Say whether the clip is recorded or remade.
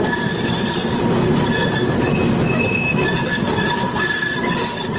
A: recorded